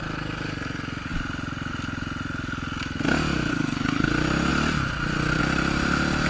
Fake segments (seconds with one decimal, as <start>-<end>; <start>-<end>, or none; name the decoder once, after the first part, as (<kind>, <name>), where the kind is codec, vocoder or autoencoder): 3.5-4.1 (codec, SNAC)